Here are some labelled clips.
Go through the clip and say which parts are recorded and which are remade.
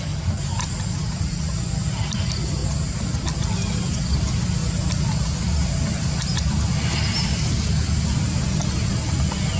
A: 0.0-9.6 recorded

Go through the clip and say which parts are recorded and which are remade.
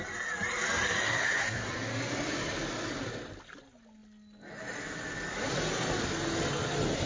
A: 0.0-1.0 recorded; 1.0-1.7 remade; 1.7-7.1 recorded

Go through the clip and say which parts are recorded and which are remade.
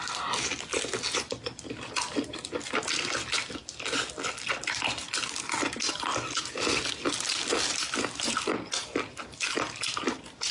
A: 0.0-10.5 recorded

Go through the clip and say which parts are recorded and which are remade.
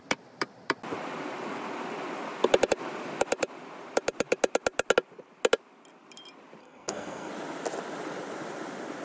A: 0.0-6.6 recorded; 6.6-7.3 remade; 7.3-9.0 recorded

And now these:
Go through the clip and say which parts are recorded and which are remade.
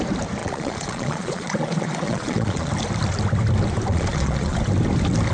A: 0.0-0.4 recorded; 0.4-2.7 remade; 2.7-3.9 recorded; 3.9-4.6 remade; 4.6-5.3 recorded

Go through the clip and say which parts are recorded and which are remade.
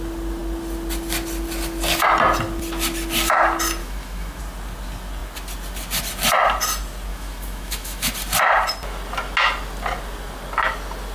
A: 0.0-3.8 recorded; 3.8-4.4 remade; 4.4-7.1 recorded; 7.1-8.1 remade; 8.1-11.1 recorded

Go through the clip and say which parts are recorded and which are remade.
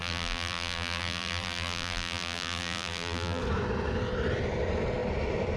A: 0.0-3.4 remade; 3.4-5.6 recorded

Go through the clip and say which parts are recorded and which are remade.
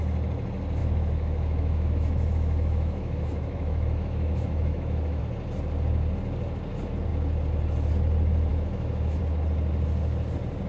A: 0.0-0.8 recorded; 0.8-5.2 remade; 5.2-8.5 recorded; 8.5-9.2 remade; 9.2-10.7 recorded